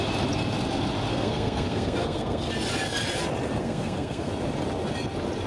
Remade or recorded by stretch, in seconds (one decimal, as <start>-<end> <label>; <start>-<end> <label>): 0.0-1.1 recorded; 1.1-2.5 remade; 2.5-3.6 recorded; 3.6-4.3 remade; 4.3-5.5 recorded